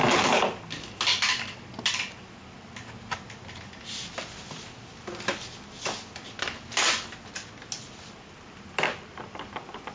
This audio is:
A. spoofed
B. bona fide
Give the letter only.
B